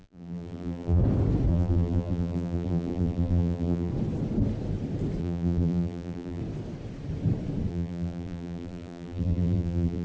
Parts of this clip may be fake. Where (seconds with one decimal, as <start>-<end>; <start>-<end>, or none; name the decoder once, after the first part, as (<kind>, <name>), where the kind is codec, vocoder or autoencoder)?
0.0-1.0 (vocoder, BigVGAN v2); 1.5-3.9; 5.2-6.4; 7.7-10.0